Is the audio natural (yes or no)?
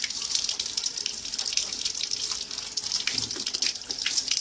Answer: no